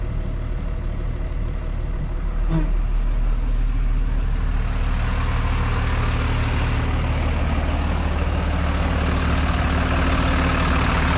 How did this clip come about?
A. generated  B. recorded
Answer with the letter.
B